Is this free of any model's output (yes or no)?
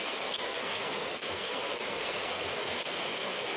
no